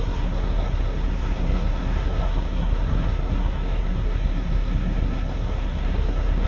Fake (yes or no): yes